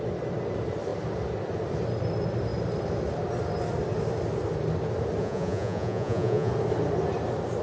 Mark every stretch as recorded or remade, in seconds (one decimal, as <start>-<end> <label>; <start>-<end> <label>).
0.0-5.2 recorded; 5.2-6.5 remade; 6.5-7.6 recorded